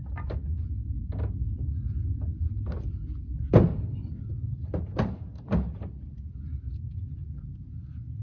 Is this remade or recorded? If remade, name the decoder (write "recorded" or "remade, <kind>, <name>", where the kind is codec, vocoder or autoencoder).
recorded